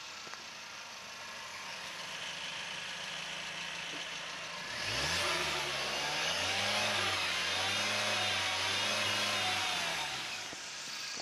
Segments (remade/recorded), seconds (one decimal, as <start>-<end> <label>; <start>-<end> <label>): 0.0-1.5 recorded; 1.5-2.0 remade; 2.0-6.2 recorded; 6.2-7.4 remade; 7.4-9.9 recorded; 9.9-10.5 remade; 10.5-11.2 recorded